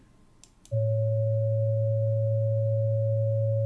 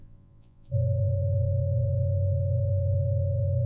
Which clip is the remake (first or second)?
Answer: second